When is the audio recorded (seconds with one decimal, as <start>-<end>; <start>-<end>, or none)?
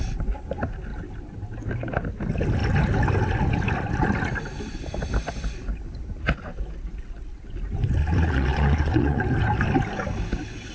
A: 0.0-8.0; 9.2-10.7